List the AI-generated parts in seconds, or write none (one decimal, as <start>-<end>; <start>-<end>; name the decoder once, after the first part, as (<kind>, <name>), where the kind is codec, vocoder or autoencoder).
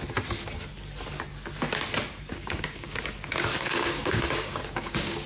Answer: 2.3-3.0 (codec, DAC); 3.5-5.3